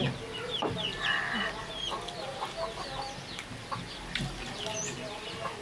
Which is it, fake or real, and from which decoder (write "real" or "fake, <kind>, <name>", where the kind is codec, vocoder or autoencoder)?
real